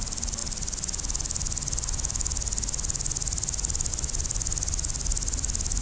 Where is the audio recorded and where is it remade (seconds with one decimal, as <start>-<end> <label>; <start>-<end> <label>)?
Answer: 0.0-5.8 recorded